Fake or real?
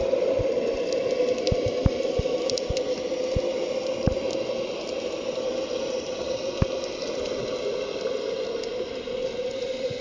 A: real